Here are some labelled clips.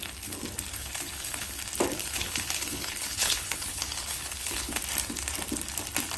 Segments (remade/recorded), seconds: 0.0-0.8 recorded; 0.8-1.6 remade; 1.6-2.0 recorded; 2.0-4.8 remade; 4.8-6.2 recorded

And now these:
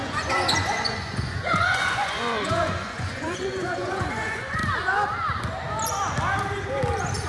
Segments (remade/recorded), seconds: 0.0-4.6 remade; 4.6-7.3 recorded

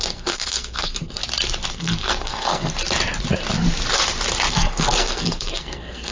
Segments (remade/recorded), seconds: 0.0-1.2 remade; 1.2-1.7 recorded; 1.7-2.7 remade; 2.7-4.5 recorded; 4.5-6.1 remade

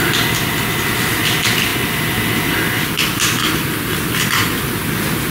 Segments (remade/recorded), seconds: 0.0-5.3 recorded

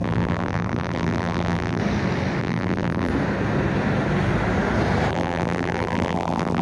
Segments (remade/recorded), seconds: 0.0-1.8 remade; 1.8-2.4 recorded; 2.4-3.1 remade; 3.1-5.1 recorded; 5.1-6.6 remade